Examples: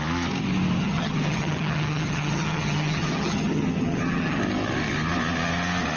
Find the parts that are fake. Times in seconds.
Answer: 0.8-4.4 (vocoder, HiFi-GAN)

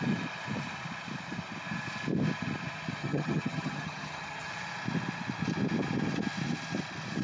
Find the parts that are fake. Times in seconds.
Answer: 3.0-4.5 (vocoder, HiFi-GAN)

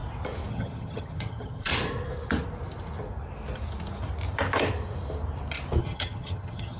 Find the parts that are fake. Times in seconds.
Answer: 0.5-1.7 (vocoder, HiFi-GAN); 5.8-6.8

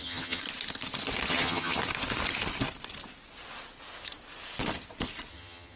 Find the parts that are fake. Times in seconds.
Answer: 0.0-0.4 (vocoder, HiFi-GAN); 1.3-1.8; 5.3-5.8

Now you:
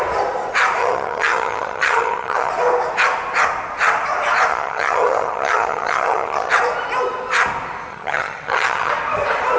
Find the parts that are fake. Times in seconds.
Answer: 0.8-2.5 (vocoder, HiFi-GAN); 4.5-6.5; 7.9-8.9